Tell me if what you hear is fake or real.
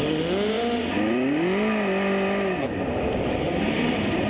real